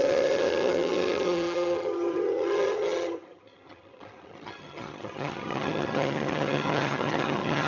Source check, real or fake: fake